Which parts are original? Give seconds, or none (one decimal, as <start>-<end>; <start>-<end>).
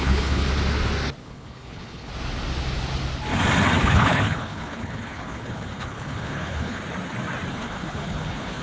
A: 0.5-1.2; 2.1-3.8; 6.8-7.5